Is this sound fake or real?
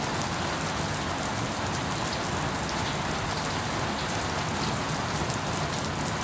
real